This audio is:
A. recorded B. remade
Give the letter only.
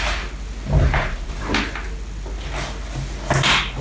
A